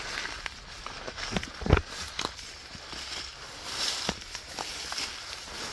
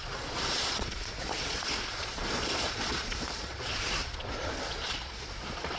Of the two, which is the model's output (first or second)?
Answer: second